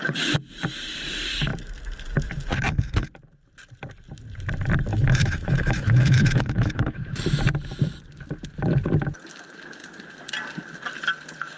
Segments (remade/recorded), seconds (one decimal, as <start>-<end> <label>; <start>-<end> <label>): 0.0-4.9 recorded; 4.9-7.2 remade; 7.2-11.6 recorded